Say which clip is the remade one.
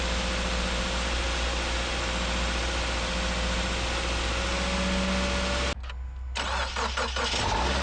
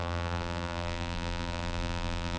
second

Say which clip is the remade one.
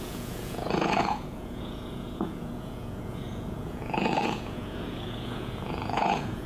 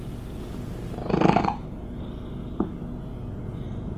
first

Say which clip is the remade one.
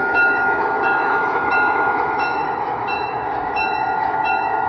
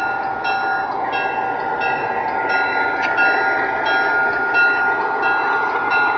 first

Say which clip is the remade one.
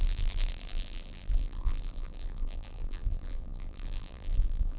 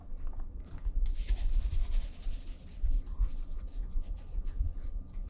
first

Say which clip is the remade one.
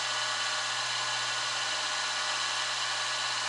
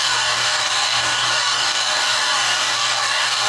second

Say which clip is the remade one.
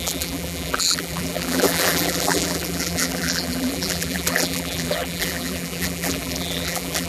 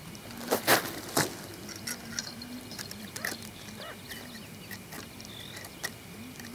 first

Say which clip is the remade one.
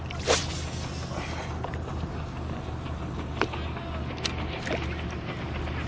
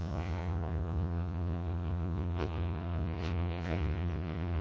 second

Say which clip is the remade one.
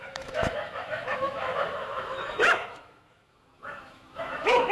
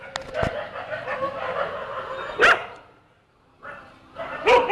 first